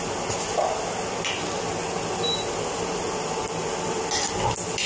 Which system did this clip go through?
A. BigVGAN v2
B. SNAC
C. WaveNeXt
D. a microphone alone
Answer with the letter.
D